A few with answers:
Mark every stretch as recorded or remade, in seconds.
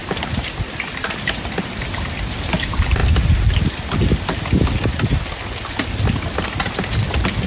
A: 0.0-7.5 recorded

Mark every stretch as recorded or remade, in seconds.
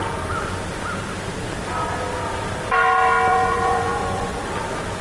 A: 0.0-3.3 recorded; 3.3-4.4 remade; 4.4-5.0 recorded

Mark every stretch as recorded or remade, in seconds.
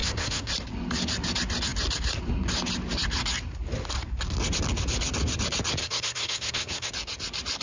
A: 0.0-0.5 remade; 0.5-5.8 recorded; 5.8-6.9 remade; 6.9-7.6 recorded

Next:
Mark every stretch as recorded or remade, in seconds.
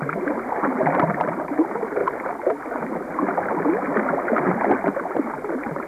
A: 0.0-2.0 remade; 2.0-5.5 recorded; 5.5-5.9 remade